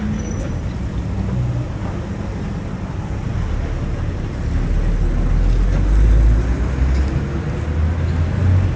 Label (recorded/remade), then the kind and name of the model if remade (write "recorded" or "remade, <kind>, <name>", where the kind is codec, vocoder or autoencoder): recorded